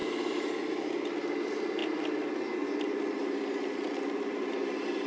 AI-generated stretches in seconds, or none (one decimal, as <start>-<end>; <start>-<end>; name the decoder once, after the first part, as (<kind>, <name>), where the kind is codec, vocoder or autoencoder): none